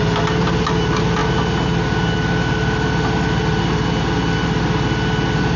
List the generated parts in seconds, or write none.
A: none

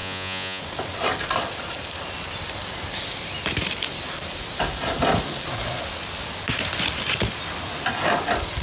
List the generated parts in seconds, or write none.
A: 0.0-0.6 (vocoder, Vocos)

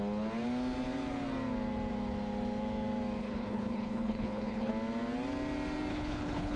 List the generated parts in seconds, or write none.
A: 3.2-4.7 (codec, HILCodec); 5.9-6.6

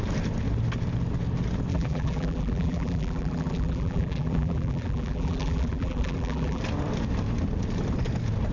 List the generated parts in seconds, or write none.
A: 1.7-6.6 (vocoder, BigVGAN v2)